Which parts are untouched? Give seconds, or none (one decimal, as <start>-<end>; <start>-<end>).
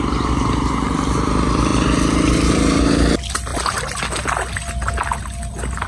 0.0-5.9